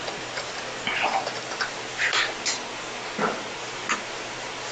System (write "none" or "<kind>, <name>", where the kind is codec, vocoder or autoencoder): none